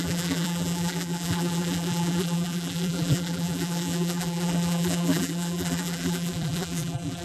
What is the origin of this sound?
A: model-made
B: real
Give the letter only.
A